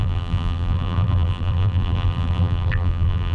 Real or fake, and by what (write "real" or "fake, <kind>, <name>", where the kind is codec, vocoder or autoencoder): fake, vocoder, BigVGAN v2